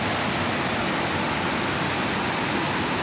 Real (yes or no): yes